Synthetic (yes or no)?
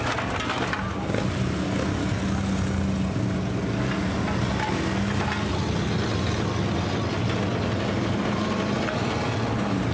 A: no